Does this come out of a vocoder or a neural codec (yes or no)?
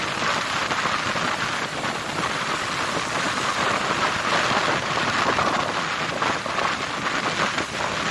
no